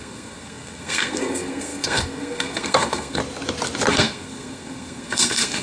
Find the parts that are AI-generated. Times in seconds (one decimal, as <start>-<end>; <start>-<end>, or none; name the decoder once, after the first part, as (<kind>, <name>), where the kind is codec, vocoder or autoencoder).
0.0-3.2 (codec, SNAC); 3.9-5.6